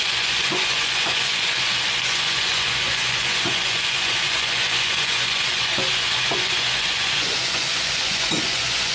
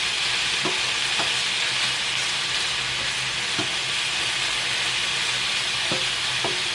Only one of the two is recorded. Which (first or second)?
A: second